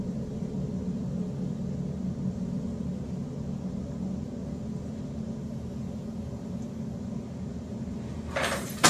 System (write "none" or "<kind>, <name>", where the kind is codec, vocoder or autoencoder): none